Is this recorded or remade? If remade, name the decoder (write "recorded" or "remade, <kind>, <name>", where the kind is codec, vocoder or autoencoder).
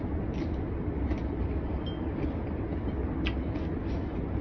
recorded